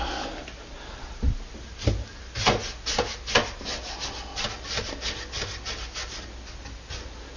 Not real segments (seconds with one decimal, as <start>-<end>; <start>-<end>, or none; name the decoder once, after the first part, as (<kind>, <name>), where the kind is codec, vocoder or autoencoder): none